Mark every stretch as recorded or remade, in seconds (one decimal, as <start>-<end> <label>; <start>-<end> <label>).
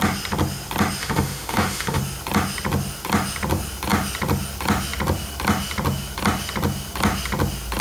0.0-1.0 recorded; 1.0-2.0 remade; 2.0-7.8 recorded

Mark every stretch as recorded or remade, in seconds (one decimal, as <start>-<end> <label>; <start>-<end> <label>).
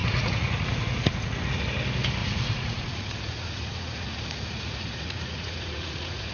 0.0-1.6 remade; 1.6-2.2 recorded; 2.2-6.3 remade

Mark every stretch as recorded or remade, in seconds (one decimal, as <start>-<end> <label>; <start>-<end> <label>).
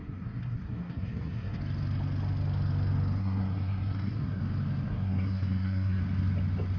0.0-1.6 remade; 1.6-3.2 recorded; 3.2-4.4 remade; 4.4-4.9 recorded; 4.9-6.0 remade; 6.0-6.8 recorded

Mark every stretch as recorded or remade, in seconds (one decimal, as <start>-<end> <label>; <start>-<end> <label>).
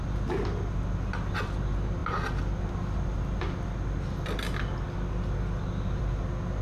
0.0-6.6 recorded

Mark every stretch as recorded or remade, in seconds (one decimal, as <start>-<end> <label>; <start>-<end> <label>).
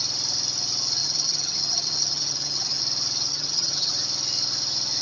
0.0-1.0 recorded; 1.0-2.8 remade; 2.8-3.3 recorded; 3.3-3.9 remade; 3.9-5.0 recorded